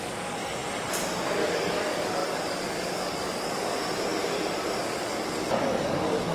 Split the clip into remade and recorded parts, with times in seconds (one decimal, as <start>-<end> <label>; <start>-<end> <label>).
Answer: 0.0-0.6 remade; 0.6-1.4 recorded; 1.4-3.8 remade; 3.8-4.8 recorded; 4.8-6.3 remade